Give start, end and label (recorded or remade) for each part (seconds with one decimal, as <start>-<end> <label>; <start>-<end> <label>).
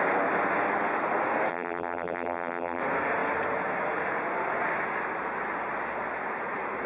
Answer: 0.0-1.5 recorded; 1.5-2.8 remade; 2.8-6.9 recorded